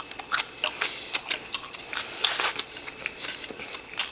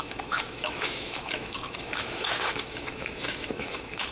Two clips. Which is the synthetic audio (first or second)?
second